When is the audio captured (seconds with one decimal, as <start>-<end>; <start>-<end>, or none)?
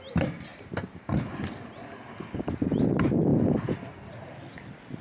0.0-0.5; 1.4-5.0